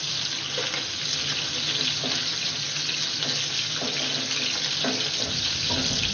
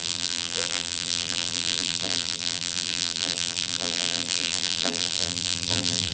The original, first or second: first